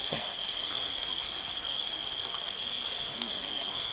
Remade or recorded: remade